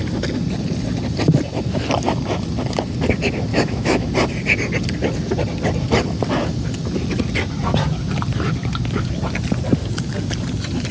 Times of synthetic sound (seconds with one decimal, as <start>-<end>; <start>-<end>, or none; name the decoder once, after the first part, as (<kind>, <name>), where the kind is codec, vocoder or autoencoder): 3.5-4.1 (autoencoder, DAC-VAE)